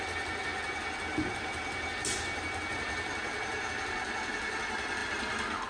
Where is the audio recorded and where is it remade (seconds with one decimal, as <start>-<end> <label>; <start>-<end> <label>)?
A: 0.0-5.7 recorded